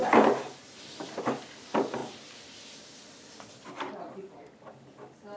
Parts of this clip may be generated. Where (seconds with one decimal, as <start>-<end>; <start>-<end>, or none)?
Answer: none